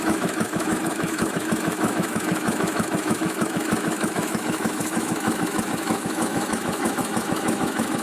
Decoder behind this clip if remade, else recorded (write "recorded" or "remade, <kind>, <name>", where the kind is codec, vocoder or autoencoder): remade, autoencoder, DAC-VAE